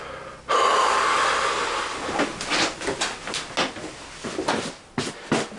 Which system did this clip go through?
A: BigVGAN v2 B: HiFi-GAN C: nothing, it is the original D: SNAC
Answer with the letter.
C